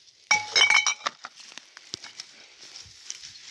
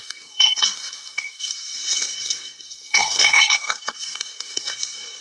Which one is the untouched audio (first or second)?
first